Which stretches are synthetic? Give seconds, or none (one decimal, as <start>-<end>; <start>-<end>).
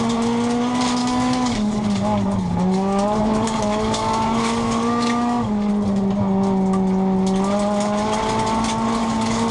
1.0-5.7; 9.0-9.5